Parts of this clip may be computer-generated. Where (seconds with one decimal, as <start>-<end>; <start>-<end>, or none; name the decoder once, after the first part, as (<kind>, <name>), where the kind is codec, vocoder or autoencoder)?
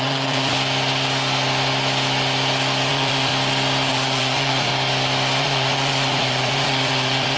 0.0-0.5 (vocoder, Vocos); 2.9-3.3; 3.9-4.7; 5.4-7.4